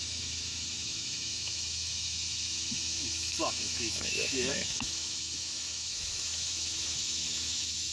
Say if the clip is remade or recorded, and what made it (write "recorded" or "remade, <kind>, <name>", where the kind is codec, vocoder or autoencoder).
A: remade, autoencoder, DAC-VAE